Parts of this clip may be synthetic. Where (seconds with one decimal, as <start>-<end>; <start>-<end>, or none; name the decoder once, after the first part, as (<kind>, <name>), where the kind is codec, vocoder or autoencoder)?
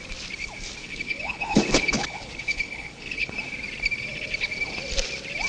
0.8-3.3 (codec, HILCodec)